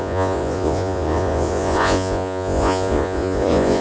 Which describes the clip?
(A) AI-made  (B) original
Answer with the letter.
A